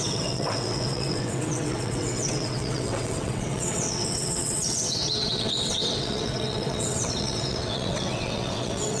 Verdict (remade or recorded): remade